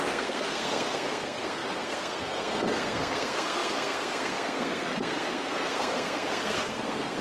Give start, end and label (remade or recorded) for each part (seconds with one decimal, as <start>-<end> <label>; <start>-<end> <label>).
0.0-7.2 remade